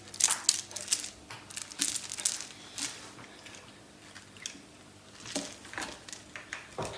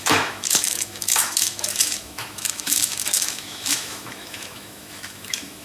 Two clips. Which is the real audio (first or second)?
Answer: first